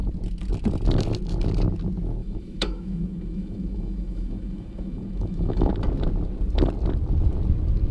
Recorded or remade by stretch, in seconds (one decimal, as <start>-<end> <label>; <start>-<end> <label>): 0.0-2.2 recorded; 2.2-5.7 remade; 5.7-7.9 recorded